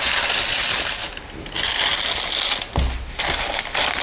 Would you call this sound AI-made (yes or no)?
no